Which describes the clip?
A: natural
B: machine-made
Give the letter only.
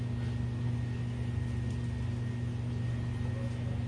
A